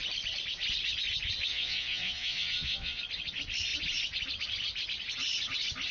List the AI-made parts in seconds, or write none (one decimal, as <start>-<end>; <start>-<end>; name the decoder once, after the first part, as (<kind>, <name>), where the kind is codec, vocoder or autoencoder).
1.5-3.0 (vocoder, Vocos)